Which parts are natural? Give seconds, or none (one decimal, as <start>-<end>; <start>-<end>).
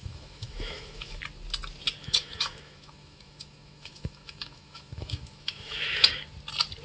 1.2-2.0; 6.1-6.8